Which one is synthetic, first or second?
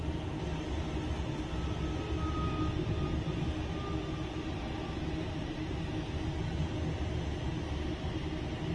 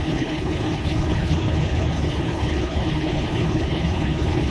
second